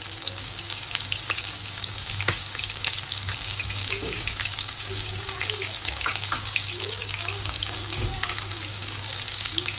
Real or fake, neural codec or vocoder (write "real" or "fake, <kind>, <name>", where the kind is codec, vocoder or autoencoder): fake, codec, DAC